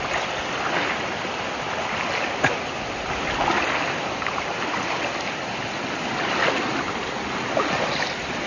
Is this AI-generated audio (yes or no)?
no